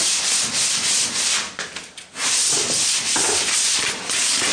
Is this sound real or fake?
fake